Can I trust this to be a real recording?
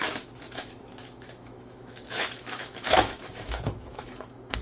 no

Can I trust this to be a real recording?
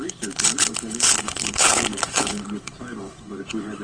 no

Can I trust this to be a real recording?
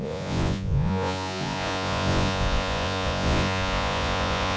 no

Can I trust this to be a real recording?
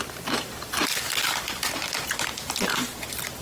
no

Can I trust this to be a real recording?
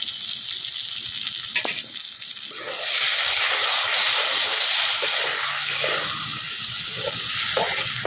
yes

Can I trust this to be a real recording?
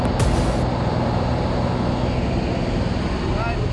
yes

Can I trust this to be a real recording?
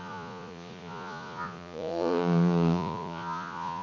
no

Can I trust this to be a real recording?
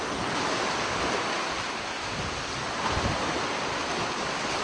yes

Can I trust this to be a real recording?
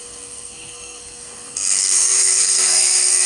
no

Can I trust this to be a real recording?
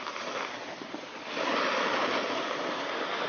yes